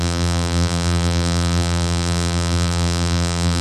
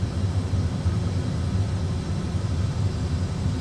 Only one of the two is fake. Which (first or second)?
first